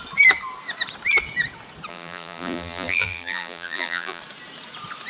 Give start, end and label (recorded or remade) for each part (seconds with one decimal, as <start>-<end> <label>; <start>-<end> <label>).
0.0-1.9 recorded; 1.9-4.2 remade; 4.2-5.1 recorded